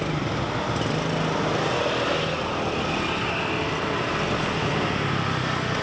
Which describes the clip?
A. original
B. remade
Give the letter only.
A